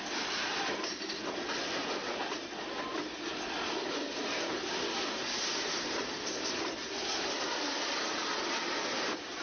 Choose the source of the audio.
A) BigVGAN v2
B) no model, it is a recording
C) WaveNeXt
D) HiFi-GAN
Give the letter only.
B